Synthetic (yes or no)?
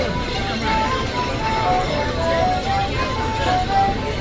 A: no